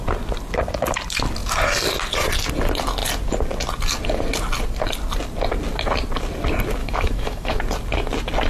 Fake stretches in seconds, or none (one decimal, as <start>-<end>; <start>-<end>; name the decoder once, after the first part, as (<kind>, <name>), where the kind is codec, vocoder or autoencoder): 6.8-7.6 (autoencoder, DAC-VAE)

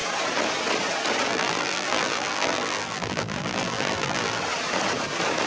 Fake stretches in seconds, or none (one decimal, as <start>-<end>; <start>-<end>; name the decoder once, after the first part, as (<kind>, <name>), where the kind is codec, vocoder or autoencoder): 1.3-4.4 (vocoder, BigVGAN v2)

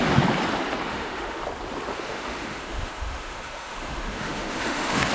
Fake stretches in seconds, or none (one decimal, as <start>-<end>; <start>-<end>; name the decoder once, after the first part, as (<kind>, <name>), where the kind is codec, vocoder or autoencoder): 0.9-1.4 (autoencoder, DAC-VAE); 1.9-5.1

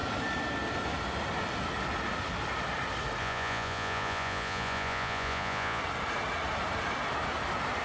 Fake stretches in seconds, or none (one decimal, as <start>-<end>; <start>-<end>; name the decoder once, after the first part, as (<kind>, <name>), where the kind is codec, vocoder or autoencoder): 3.2-5.8 (vocoder, Vocos)

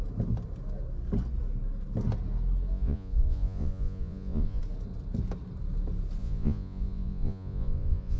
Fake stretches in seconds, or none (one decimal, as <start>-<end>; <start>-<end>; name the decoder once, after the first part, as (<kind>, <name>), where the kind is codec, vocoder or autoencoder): 2.7-4.6 (vocoder, Vocos); 6.2-8.2

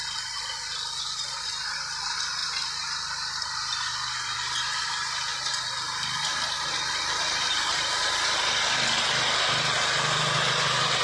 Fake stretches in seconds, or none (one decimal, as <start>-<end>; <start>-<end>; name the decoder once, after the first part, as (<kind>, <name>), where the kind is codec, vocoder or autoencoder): none

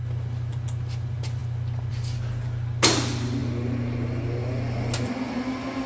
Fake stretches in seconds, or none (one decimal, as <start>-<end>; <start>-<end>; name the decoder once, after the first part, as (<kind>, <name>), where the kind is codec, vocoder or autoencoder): none

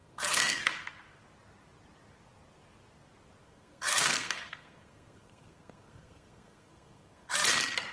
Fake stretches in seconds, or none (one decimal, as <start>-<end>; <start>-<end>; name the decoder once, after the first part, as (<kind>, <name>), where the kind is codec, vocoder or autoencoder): 0.0-0.7 (codec, SNAC); 3.4-7.3